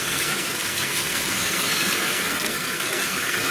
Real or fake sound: fake